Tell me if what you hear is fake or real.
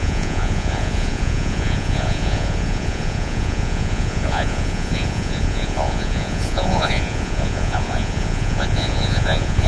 fake